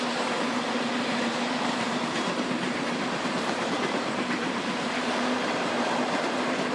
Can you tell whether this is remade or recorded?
remade